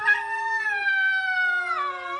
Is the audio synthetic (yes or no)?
no